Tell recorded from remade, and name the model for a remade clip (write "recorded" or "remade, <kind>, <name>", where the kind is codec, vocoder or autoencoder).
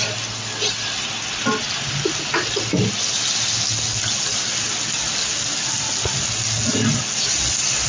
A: recorded